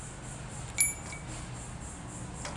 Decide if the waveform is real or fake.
real